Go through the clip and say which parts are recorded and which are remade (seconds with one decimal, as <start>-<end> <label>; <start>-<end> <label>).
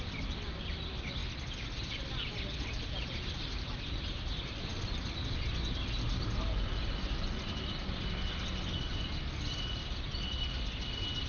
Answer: 0.0-11.3 recorded